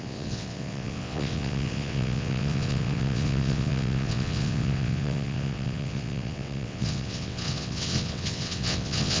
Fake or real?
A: fake